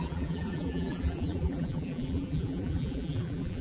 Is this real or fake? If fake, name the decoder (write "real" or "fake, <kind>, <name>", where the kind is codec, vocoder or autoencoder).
fake, vocoder, BigVGAN v2